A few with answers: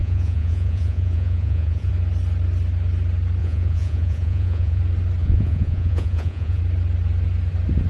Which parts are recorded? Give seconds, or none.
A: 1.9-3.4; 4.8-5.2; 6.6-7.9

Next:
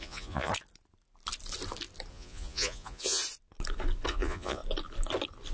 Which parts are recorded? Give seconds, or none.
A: 0.5-2.1; 3.2-4.1; 4.6-5.5

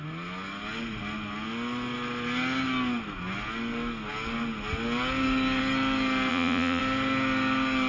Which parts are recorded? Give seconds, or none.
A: 0.0-6.3; 6.8-7.9

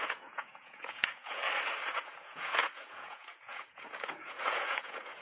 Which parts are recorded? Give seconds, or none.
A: 1.4-1.9

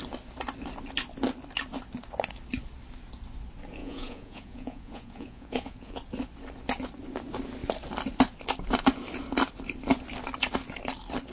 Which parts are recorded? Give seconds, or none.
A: 0.0-3.8; 6.0-11.3